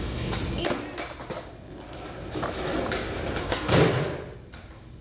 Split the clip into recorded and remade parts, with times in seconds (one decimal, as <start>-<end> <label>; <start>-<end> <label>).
0.0-0.4 remade; 0.4-3.4 recorded; 3.4-4.0 remade; 4.0-5.0 recorded

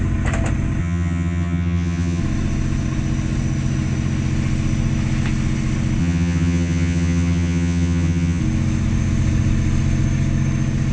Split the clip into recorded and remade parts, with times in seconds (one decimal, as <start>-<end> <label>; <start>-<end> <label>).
0.0-0.8 recorded; 0.8-2.2 remade; 2.2-6.0 recorded; 6.0-8.4 remade; 8.4-10.9 recorded

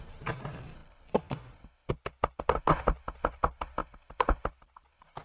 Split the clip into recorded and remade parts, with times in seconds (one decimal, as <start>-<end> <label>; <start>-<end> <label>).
0.0-0.8 recorded; 0.8-1.5 remade; 1.5-3.8 recorded; 3.8-4.4 remade; 4.4-5.2 recorded

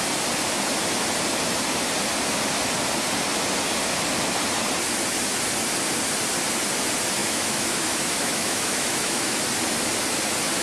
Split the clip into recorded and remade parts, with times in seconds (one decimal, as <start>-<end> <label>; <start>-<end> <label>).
0.0-7.2 recorded; 7.2-9.4 remade; 9.4-10.6 recorded

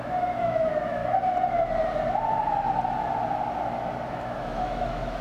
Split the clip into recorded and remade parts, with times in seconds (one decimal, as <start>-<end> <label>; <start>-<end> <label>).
0.0-1.0 remade; 1.0-4.1 recorded; 4.1-5.2 remade